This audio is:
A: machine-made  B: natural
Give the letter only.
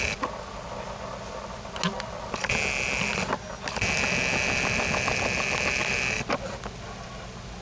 B